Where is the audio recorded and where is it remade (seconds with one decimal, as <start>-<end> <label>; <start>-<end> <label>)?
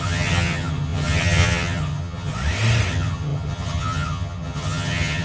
0.0-2.3 remade; 2.3-2.9 recorded; 2.9-5.2 remade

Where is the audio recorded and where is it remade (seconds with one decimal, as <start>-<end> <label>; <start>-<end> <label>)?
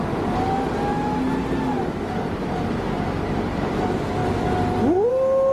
0.0-5.5 recorded